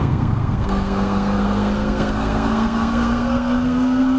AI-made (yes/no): yes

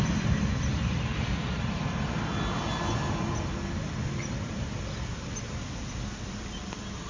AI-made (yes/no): no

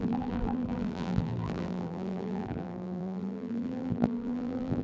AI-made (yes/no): yes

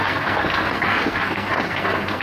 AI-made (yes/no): yes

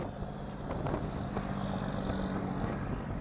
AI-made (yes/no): no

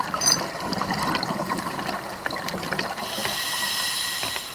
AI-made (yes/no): no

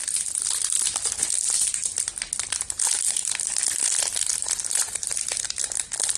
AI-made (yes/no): no